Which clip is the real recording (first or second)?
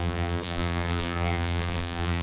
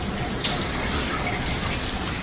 second